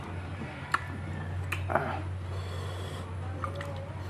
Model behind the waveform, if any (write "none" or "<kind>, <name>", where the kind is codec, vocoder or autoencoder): none